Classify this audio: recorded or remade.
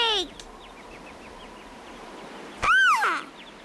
recorded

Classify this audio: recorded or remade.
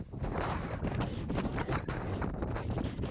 recorded